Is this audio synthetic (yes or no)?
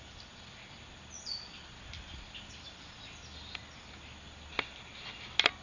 no